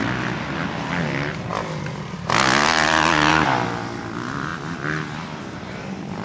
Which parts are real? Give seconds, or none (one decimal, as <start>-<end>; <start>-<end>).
0.0-6.2